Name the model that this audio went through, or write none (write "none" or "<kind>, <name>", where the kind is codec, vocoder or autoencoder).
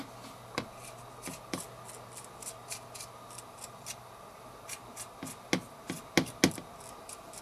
none